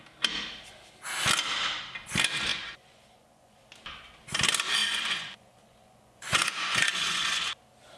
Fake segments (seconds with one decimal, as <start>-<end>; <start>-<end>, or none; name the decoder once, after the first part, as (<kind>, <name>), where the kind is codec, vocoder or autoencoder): 2.5-3.6 (vocoder, Vocos); 4.8-7.5